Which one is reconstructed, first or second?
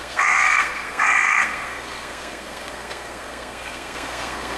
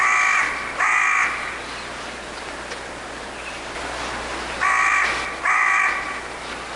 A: first